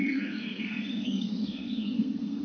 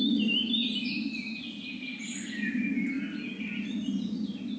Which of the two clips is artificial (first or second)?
first